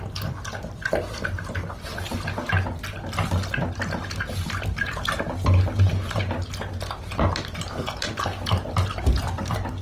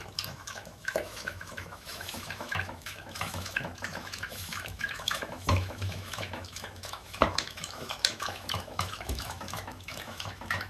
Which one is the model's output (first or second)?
second